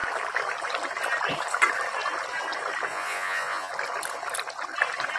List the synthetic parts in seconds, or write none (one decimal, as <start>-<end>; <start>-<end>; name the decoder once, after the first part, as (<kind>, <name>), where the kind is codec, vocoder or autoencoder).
2.9-3.7 (vocoder, Vocos)